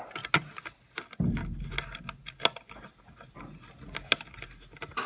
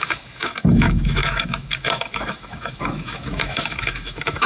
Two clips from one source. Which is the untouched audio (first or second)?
first